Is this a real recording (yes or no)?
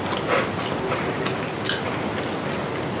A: yes